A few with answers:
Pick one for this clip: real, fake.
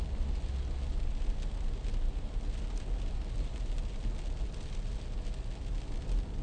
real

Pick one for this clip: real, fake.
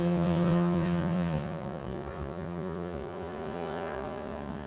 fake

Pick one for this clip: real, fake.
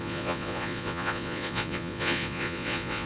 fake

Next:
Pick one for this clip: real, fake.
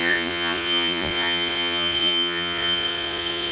fake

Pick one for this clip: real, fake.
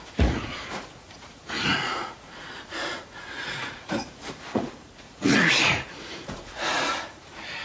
fake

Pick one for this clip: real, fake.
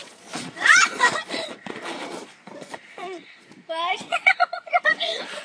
fake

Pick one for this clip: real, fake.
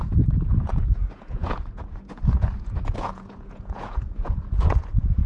fake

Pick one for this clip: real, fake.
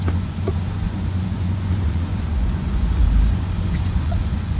fake